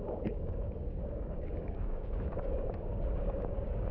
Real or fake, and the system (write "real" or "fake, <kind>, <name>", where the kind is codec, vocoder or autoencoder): fake, codec, DAC